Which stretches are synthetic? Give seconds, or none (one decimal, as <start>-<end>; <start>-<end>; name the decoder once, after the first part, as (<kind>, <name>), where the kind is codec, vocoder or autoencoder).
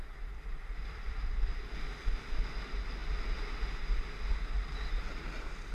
0.5-1.6 (vocoder, BigVGAN v2)